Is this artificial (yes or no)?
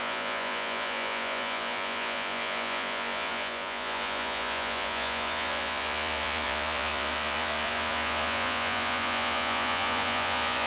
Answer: yes